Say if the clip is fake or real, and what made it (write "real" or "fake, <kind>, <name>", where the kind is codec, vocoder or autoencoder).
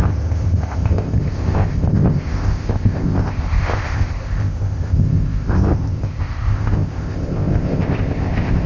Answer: fake, codec, ZipCodec